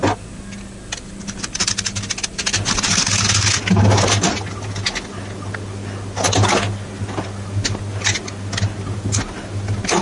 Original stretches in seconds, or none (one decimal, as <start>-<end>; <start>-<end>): 0.0-10.0